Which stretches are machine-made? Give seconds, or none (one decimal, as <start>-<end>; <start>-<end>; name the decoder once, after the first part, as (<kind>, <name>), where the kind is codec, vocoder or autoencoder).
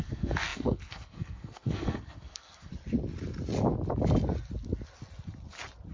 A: 0.0-2.7 (codec, SNAC)